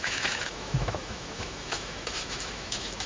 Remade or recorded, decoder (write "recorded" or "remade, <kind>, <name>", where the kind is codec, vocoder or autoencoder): remade, autoencoder, DAC-VAE